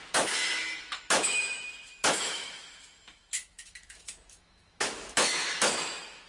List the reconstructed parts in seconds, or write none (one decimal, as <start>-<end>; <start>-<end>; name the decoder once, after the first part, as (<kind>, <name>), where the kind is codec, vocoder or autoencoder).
0.0-6.3 (autoencoder, DAC-VAE)